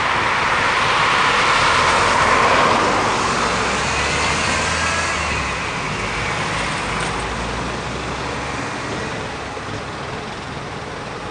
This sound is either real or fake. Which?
real